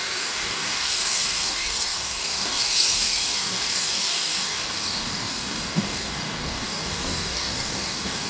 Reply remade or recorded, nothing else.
remade